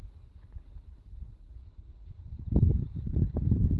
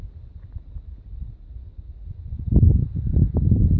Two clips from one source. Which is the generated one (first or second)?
first